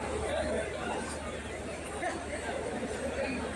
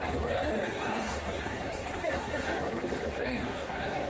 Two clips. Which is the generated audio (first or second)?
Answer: second